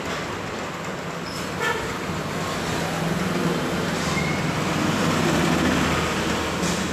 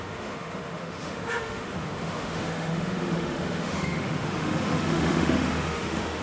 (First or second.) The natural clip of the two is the first